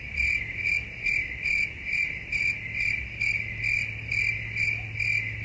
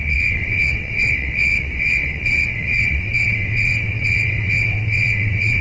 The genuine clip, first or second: first